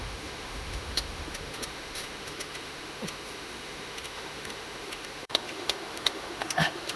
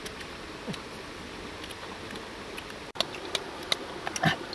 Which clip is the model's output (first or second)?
first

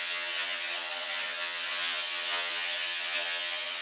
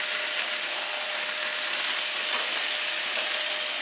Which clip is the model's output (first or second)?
first